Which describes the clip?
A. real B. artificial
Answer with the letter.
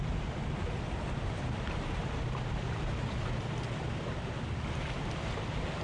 B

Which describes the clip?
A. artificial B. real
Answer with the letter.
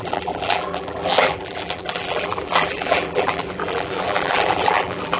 A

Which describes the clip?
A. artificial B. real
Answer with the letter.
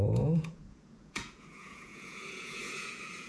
A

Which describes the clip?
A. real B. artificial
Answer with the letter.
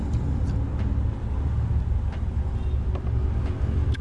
A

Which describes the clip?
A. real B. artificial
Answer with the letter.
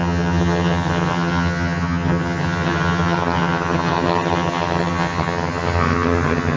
B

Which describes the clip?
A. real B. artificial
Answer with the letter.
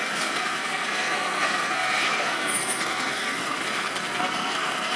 B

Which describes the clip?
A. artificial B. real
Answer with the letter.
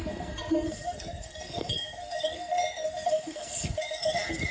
A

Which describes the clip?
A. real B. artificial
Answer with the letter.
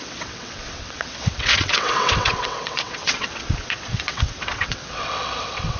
B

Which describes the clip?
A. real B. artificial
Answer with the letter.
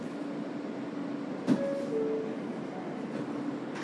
A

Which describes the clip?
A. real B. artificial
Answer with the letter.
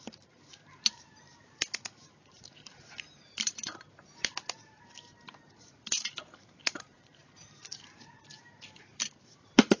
B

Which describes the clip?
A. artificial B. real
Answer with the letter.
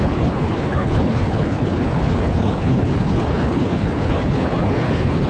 A